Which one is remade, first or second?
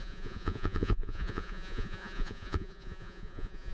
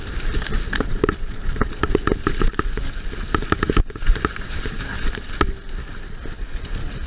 first